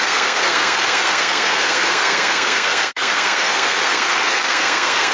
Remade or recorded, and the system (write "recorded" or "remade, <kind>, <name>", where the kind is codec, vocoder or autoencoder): remade, codec, SNAC